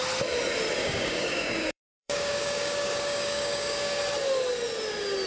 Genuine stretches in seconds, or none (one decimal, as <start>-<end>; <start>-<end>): 0.0-0.8; 4.0-5.3